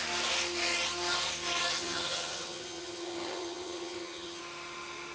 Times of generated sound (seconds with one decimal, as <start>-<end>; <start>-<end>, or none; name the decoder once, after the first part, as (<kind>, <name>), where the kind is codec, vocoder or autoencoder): 1.7-4.4 (vocoder, HiFi-GAN)